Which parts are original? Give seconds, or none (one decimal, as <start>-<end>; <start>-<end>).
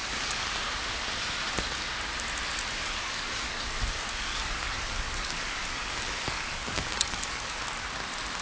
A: 0.5-2.6; 7.6-8.4